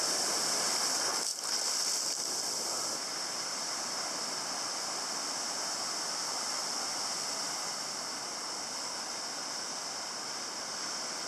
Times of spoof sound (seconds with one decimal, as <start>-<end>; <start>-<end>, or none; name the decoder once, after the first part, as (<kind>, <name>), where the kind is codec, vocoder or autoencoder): none